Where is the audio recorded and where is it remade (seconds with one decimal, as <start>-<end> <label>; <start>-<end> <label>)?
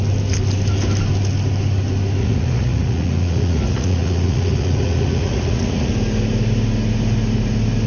0.0-2.2 recorded; 2.2-5.9 remade; 5.9-7.9 recorded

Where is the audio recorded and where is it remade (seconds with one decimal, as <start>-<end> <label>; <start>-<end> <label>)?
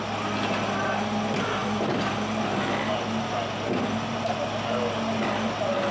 0.0-5.9 recorded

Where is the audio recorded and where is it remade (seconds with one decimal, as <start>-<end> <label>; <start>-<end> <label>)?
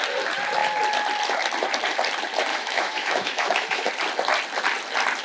0.0-2.5 recorded; 2.5-3.9 remade; 3.9-5.2 recorded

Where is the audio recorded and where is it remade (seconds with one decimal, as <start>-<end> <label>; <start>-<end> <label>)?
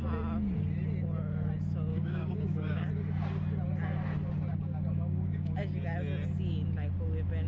0.0-1.9 recorded; 1.9-2.9 remade; 2.9-4.5 recorded; 4.5-5.6 remade; 5.6-7.5 recorded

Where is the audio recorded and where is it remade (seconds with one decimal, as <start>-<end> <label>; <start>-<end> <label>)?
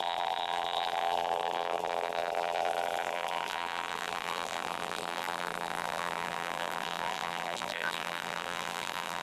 0.0-9.2 remade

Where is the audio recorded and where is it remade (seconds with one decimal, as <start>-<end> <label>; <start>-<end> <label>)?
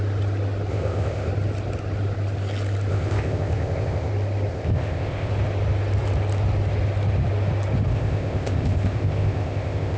0.0-0.7 recorded; 0.7-1.3 remade; 1.3-2.9 recorded; 2.9-4.1 remade; 4.1-4.5 recorded; 4.5-5.3 remade; 5.3-7.9 recorded; 7.9-10.0 remade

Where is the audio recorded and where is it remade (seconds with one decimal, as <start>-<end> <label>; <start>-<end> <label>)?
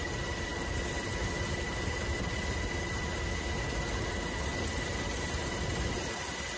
0.0-4.5 recorded; 4.5-6.6 remade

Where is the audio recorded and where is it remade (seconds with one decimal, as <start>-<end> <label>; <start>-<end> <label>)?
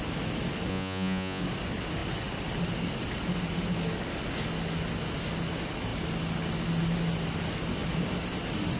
0.0-0.7 recorded; 0.7-1.4 remade; 1.4-8.8 recorded